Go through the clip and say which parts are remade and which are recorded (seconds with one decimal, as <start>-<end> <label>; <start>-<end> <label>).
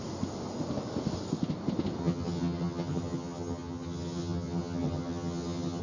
0.0-2.0 recorded; 2.0-5.8 remade